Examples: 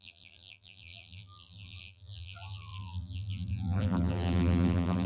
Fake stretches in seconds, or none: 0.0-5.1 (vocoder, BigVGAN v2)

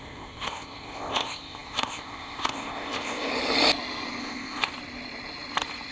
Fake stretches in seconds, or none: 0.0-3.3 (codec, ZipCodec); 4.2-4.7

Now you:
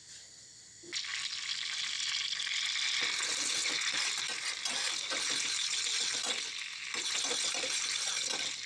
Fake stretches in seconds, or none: none

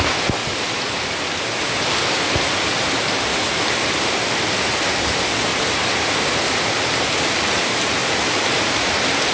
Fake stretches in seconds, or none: 0.4-1.2 (vocoder, BigVGAN v2); 3.3-4.0; 8.0-9.3